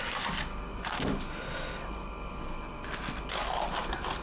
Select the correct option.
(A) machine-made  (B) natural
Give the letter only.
B